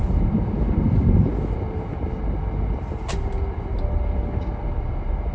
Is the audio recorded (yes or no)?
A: yes